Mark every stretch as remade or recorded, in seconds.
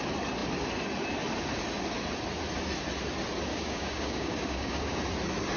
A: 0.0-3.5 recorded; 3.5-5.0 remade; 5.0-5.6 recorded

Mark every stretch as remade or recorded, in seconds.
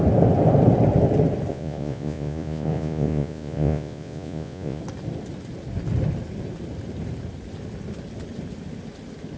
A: 0.0-1.5 recorded; 1.5-4.8 remade; 4.8-9.4 recorded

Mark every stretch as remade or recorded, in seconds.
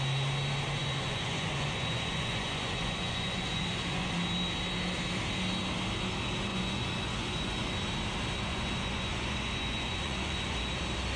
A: 0.0-0.8 recorded; 0.8-4.1 remade; 4.1-6.5 recorded; 6.5-7.7 remade; 7.7-8.5 recorded; 8.5-10.7 remade; 10.7-11.2 recorded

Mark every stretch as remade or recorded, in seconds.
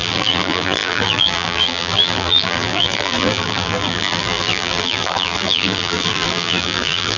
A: 0.0-7.2 remade